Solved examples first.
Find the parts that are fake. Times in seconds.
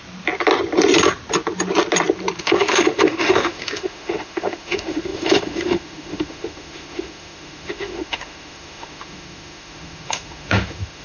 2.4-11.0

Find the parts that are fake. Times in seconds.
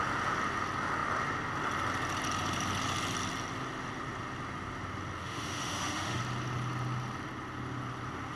5.2-6.2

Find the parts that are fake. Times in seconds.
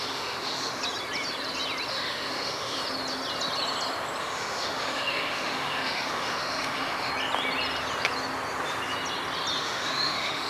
0.0-0.8; 1.9-2.8; 4.2-7.1; 9.6-10.5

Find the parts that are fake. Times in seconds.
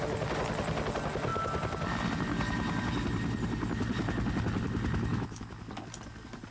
5.1-5.6